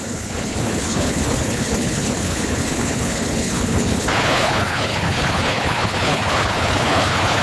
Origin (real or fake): fake